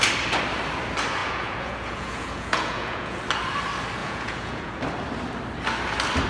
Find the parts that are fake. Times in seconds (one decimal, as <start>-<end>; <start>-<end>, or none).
1.2-3.2; 4.0-4.8